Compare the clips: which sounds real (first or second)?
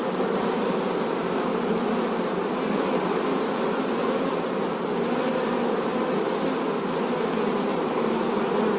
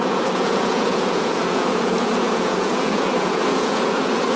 first